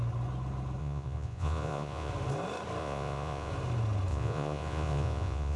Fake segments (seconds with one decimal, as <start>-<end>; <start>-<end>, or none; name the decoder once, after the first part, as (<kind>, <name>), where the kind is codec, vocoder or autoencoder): 0.8-2.1 (vocoder, Vocos); 2.8-3.5; 4.1-5.6